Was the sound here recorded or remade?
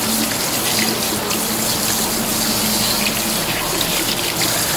recorded